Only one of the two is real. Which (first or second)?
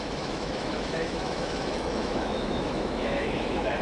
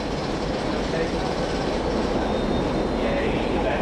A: second